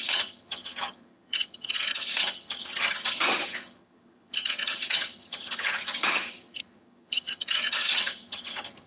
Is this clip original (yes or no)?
no